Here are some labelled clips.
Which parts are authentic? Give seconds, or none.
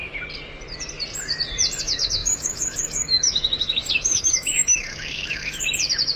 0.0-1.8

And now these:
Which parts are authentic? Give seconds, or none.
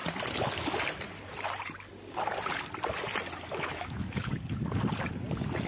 0.0-3.5; 4.3-5.7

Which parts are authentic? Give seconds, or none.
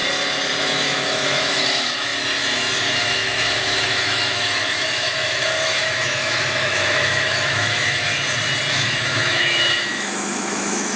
0.0-0.6; 2.1-3.0; 8.1-8.7